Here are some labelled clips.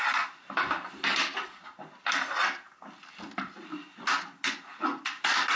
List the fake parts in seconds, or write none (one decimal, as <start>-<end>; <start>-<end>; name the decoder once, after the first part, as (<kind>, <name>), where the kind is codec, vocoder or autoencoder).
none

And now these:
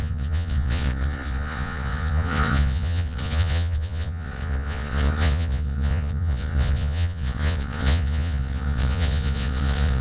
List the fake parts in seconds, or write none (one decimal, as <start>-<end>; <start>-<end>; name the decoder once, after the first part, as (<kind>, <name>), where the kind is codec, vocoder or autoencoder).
0.0-10.0 (vocoder, Vocos)

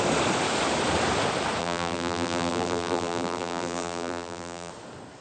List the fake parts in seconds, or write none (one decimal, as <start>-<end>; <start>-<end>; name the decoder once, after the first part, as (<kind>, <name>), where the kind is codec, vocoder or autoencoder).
1.6-4.7 (vocoder, BigVGAN v2)

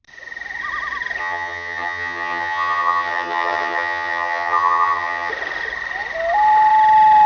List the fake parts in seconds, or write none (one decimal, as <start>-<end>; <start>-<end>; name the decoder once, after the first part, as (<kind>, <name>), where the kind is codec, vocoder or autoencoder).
1.2-5.3 (vocoder, HiFi-GAN)

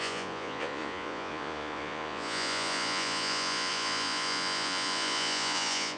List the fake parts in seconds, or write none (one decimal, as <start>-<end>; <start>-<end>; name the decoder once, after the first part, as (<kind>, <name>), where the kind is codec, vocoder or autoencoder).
0.0-6.0 (vocoder, Vocos)

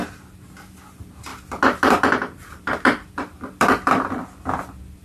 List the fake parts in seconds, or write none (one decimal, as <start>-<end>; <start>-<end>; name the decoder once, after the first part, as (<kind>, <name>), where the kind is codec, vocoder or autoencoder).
1.3-4.0 (vocoder, BigVGAN v2)